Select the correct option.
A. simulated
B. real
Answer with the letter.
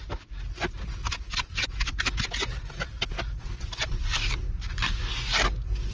B